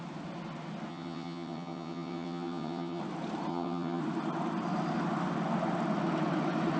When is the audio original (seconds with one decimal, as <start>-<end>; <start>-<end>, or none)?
0.0-0.9; 3.0-3.5; 4.0-6.8

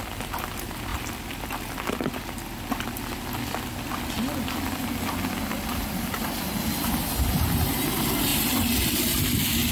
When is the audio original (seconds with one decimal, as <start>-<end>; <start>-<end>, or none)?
0.0-9.7

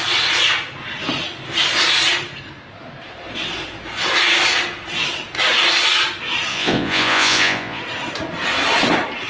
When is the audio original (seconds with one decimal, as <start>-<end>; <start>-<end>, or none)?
0.0-6.5; 7.8-9.3